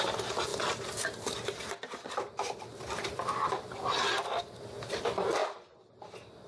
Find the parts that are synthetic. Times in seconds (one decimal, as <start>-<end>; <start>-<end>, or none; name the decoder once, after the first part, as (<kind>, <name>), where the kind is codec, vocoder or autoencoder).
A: none